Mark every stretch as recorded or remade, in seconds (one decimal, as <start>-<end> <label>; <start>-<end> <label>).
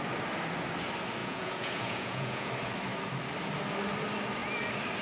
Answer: 0.0-1.2 recorded; 1.2-2.5 remade; 2.5-5.0 recorded